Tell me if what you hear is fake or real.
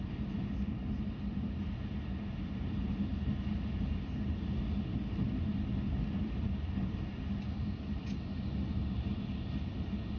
real